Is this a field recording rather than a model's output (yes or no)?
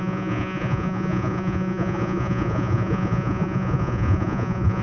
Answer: no